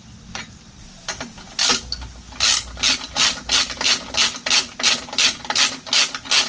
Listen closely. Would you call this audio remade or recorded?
recorded